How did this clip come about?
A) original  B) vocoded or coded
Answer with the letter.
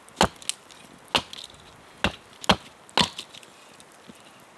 A